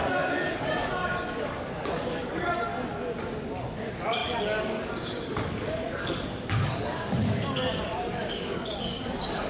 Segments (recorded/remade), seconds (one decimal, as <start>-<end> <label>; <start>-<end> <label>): 0.0-2.7 remade; 2.7-3.7 recorded; 3.7-9.5 remade